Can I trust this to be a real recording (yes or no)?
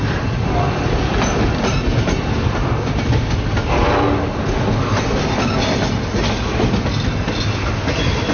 yes